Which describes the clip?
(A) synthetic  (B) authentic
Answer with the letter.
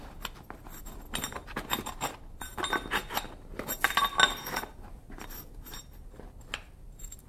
B